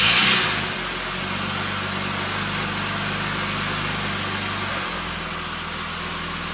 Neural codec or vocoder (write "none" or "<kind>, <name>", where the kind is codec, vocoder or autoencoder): none